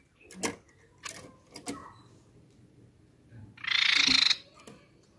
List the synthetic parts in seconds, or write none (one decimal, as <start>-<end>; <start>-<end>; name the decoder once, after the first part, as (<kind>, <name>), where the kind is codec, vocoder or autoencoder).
none